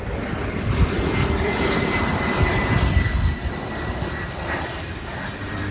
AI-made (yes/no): yes